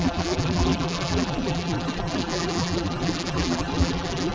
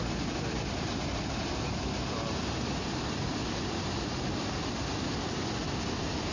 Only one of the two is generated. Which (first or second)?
first